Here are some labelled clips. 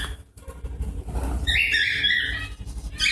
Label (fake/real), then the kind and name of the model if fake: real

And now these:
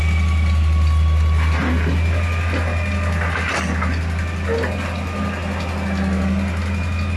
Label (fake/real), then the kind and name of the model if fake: real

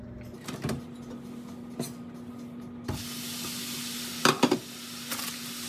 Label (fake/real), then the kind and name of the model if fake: real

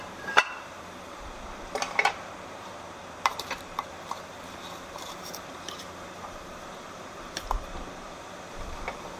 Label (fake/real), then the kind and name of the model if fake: fake, vocoder, BigVGAN v2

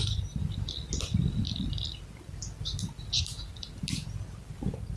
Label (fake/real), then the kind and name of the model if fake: real